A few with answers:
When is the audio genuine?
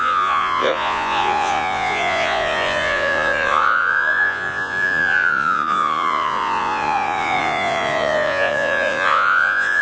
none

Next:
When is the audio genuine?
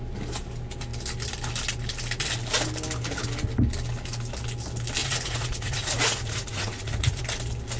0.0-5.0; 7.2-7.8